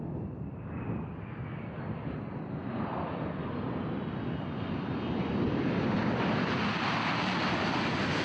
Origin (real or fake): real